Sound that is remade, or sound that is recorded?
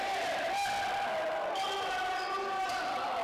recorded